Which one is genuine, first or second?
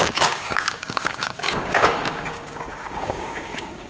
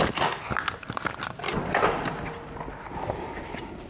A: second